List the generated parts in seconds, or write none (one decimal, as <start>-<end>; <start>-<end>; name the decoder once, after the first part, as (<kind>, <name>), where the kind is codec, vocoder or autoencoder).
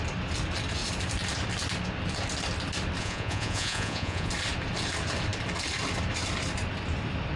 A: 3.0-4.3 (vocoder, Vocos)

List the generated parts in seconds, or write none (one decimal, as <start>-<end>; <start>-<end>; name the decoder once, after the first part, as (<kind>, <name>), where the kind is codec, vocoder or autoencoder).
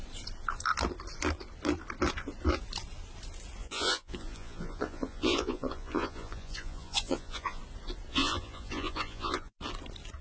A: 3.6-7.6 (vocoder, Vocos); 8.1-9.5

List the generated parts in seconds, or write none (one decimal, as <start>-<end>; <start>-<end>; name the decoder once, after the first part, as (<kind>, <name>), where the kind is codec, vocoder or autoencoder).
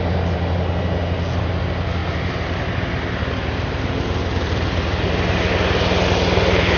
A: none